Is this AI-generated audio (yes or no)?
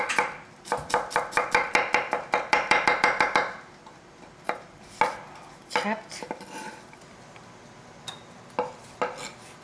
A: no